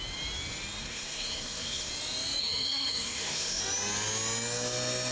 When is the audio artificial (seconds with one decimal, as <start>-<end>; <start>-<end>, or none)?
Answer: 0.8-1.9; 2.4-3.6